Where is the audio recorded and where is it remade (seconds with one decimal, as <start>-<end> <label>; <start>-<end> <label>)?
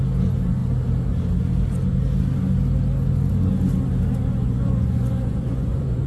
0.0-4.3 recorded; 4.3-6.1 remade